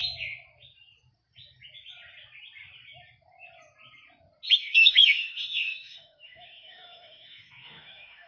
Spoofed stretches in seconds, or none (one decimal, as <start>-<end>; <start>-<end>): 4.6-8.3